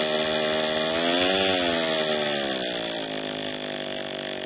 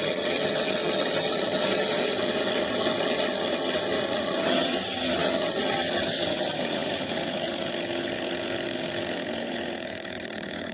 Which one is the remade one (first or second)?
second